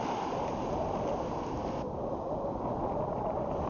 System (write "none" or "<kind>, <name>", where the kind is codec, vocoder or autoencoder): none